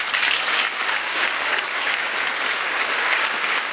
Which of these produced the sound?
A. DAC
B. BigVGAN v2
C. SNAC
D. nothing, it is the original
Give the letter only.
A